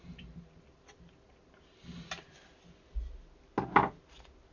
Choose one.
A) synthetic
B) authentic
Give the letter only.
B